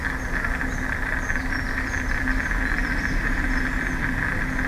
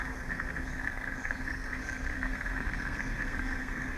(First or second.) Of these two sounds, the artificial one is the second